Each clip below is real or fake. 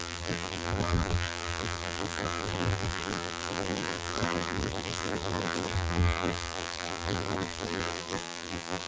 fake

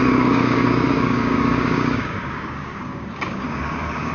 fake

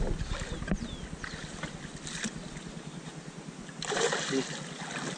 real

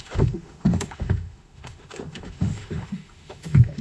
fake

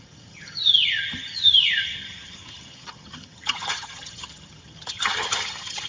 fake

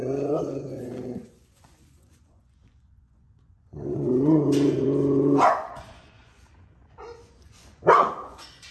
fake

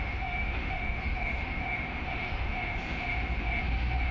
fake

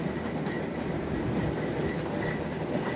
real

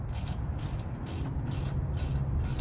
real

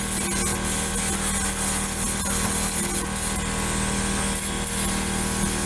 real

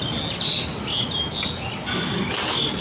real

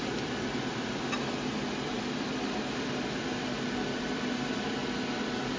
real